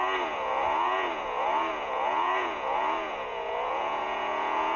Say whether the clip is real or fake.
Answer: fake